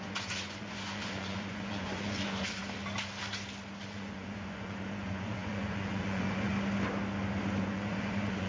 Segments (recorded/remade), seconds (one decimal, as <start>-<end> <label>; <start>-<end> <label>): 0.0-2.6 remade; 2.6-3.8 recorded; 3.8-6.5 remade; 6.5-7.6 recorded; 7.6-8.5 remade